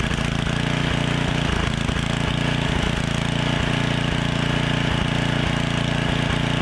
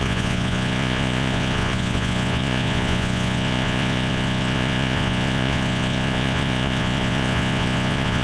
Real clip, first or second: first